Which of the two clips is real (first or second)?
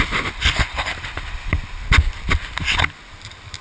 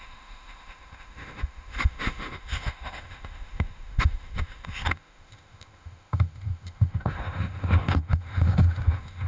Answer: first